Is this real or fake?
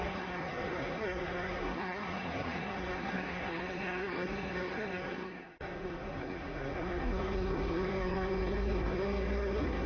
fake